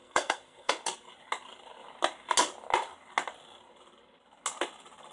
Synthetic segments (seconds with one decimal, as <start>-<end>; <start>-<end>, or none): 0.0-0.7